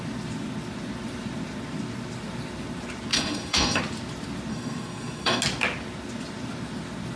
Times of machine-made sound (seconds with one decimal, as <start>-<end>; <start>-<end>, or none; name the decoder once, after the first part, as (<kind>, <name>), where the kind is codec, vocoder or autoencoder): 3.1-3.8 (codec, SNAC); 4.5-5.4